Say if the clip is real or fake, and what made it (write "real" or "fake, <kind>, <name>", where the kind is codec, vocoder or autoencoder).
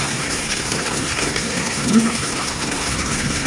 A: fake, codec, SNAC